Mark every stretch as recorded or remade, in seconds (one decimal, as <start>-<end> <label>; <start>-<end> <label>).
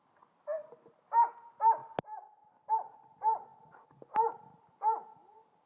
0.0-5.7 recorded